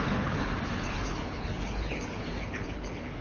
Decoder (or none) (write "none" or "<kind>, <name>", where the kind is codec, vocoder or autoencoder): codec, HILCodec